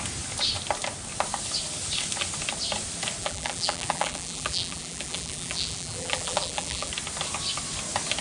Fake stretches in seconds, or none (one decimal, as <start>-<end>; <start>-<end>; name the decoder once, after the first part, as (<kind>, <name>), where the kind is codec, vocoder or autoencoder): 3.2-6.9 (vocoder, BigVGAN v2)

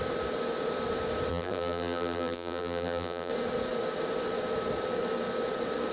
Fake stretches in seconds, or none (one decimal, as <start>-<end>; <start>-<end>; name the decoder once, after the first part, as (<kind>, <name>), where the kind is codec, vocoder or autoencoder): 1.3-3.3 (vocoder, BigVGAN v2)